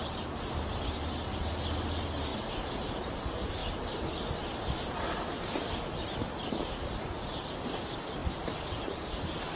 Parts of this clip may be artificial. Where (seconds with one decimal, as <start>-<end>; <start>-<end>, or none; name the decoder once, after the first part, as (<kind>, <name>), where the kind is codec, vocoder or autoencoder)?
0.0-2.3 (vocoder, BigVGAN v2); 2.9-3.6; 6.5-9.6

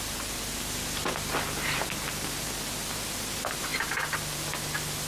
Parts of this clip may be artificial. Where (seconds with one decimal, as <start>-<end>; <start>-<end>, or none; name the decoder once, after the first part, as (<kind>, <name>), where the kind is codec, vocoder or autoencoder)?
none

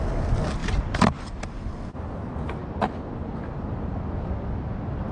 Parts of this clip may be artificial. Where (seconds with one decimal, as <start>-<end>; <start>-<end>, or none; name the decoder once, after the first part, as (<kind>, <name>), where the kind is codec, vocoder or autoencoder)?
0.6-1.6 (vocoder, BigVGAN v2)

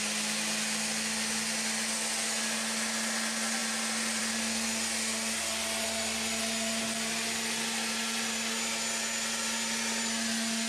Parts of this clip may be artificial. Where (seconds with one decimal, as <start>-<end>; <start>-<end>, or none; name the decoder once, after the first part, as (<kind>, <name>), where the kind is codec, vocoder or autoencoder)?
none

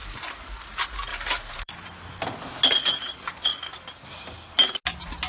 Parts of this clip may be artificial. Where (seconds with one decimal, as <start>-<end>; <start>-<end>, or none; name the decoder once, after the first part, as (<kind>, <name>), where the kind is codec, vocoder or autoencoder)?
1.1-2.2 (vocoder, BigVGAN v2)